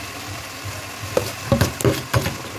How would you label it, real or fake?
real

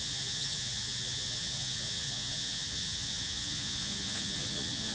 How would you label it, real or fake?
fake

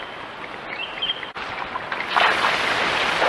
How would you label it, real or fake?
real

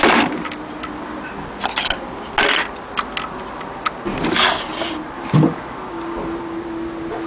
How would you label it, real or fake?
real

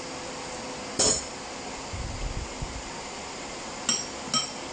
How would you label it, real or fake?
real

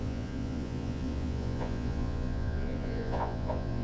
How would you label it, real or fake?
fake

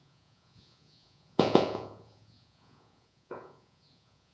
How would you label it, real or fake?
fake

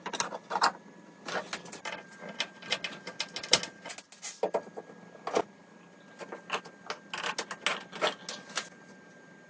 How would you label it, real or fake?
real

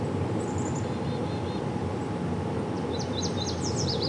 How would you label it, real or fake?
real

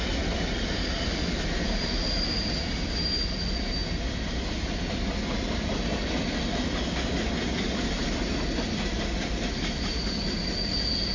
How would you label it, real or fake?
real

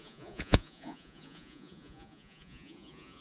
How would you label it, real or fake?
fake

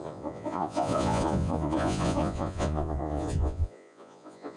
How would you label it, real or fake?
fake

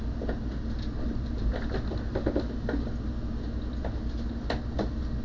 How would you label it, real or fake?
real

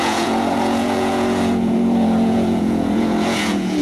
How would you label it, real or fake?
fake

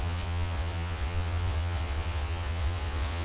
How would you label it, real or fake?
fake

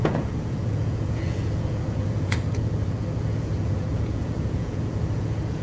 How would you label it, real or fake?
fake